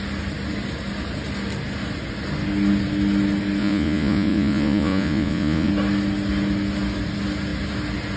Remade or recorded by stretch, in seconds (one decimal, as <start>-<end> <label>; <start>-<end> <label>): 0.0-3.6 recorded; 3.6-5.7 remade; 5.7-8.2 recorded